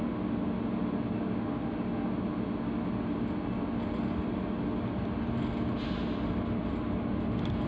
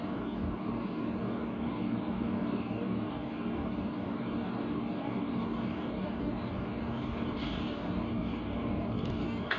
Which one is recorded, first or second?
first